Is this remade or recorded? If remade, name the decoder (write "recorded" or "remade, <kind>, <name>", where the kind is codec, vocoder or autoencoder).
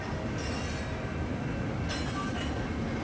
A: recorded